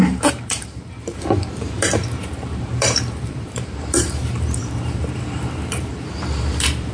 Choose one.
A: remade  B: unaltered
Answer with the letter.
A